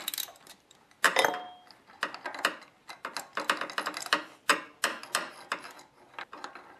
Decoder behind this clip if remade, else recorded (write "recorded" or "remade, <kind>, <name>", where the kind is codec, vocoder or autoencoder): recorded